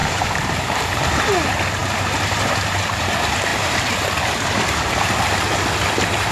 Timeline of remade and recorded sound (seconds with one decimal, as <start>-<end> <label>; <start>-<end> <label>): 0.0-1.0 remade; 1.0-1.8 recorded; 1.8-3.1 remade; 3.1-3.5 recorded; 3.5-5.1 remade; 5.1-6.3 recorded